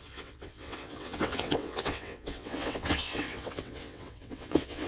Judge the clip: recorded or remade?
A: remade